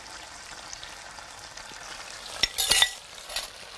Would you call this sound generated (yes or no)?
no